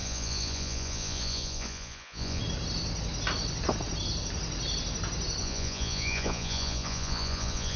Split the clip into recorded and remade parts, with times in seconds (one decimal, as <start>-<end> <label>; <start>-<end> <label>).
0.0-2.4 remade; 2.4-5.4 recorded; 5.4-7.8 remade